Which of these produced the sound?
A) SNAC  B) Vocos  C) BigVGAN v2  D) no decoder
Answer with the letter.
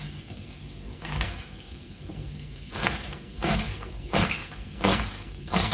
A